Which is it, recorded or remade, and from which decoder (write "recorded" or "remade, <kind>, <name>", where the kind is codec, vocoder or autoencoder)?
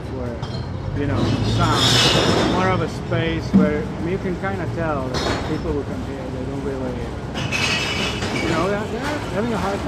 recorded